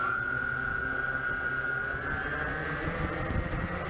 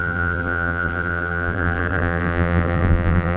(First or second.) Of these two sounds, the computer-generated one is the second